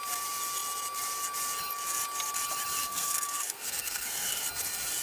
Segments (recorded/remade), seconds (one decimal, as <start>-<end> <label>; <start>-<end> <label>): 0.0-2.8 recorded; 2.8-4.5 remade; 4.5-5.0 recorded